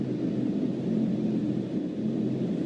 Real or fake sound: fake